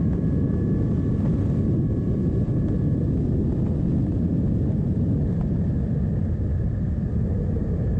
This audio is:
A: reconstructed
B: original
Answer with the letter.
B